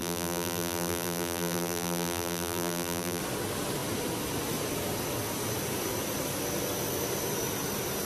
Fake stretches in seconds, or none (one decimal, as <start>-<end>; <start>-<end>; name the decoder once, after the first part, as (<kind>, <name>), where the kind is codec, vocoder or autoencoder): 0.0-3.2 (vocoder, BigVGAN v2)